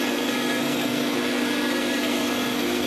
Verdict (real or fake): fake